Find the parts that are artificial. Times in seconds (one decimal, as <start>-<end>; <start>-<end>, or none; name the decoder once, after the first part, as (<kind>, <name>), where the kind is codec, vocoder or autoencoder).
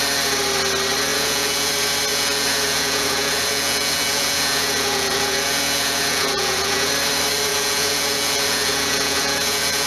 1.1-1.7 (vocoder, Vocos); 2.1-6.9; 7.5-9.9